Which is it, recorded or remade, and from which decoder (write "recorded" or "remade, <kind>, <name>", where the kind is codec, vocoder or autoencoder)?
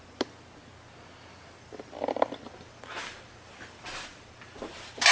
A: recorded